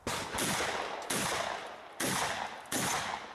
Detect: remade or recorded recorded